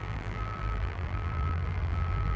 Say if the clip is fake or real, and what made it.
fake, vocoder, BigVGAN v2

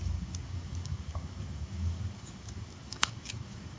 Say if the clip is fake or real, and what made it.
fake, codec, DAC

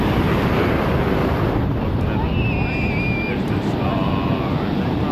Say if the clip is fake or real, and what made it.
real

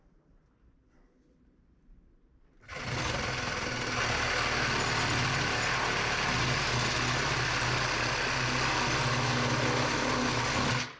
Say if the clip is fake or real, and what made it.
real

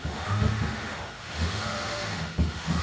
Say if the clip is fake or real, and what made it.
fake, autoencoder, DAC-VAE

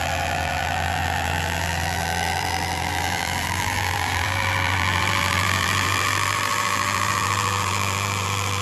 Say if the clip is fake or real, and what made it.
fake, vocoder, BigVGAN v2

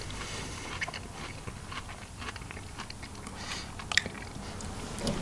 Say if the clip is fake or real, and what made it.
real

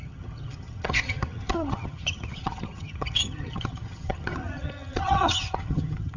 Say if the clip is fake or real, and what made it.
fake, vocoder, HiFi-GAN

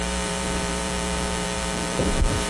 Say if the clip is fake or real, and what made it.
fake, vocoder, BigVGAN v2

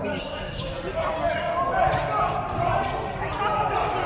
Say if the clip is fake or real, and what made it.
real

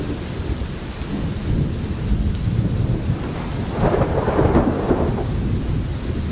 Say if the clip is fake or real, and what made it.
real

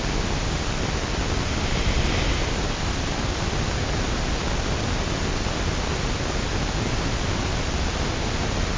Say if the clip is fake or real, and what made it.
real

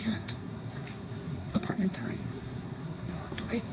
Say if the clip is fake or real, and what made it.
fake, codec, SNAC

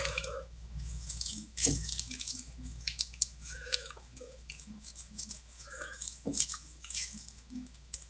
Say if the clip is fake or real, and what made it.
fake, autoencoder, DAC-VAE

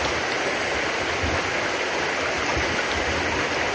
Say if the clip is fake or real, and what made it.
real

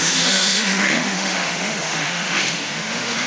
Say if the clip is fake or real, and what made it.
fake, autoencoder, DAC-VAE